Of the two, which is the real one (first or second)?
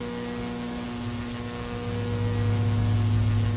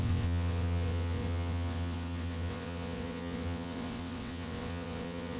first